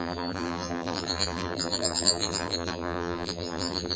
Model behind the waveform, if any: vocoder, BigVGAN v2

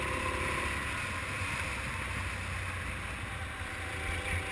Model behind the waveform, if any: none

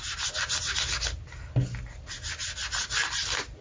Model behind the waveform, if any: none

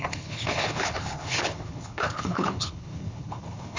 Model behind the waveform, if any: codec, HILCodec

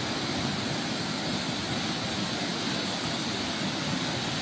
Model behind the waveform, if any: none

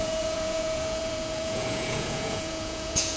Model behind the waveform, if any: vocoder, Vocos